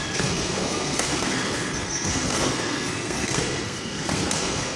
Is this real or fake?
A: fake